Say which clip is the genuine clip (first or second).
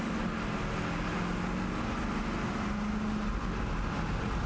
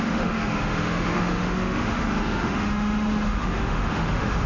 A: first